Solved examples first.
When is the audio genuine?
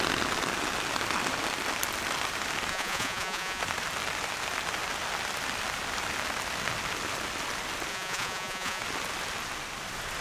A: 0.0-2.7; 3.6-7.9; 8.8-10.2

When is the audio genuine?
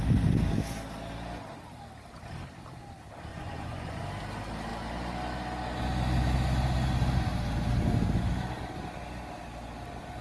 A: 0.0-3.3; 4.0-10.2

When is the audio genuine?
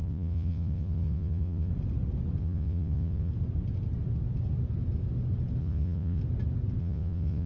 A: 1.7-2.4; 3.3-5.6; 6.2-6.8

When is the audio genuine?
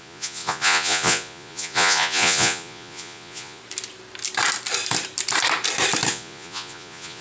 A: 3.6-6.1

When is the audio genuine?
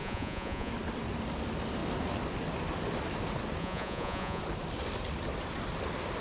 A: 0.7-3.6; 4.4-6.2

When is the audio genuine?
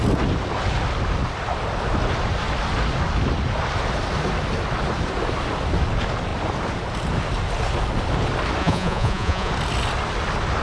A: 0.0-8.6; 9.5-10.6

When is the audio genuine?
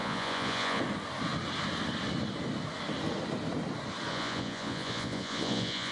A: 0.8-4.1